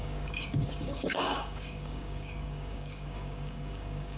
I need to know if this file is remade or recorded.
remade